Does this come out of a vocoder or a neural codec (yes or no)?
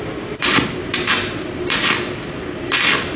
no